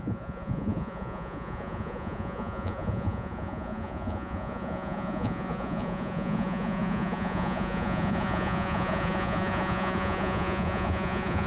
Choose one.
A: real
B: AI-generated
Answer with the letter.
B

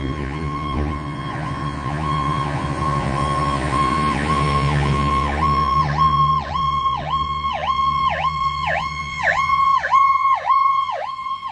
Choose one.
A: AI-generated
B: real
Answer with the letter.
A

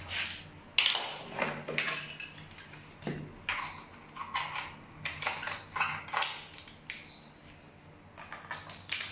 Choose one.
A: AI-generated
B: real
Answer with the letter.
B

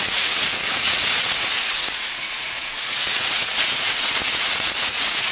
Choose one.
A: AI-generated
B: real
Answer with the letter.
A